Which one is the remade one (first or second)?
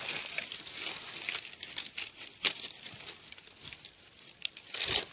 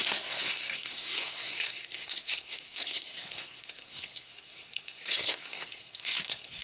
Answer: second